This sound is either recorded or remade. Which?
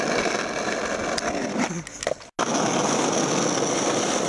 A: recorded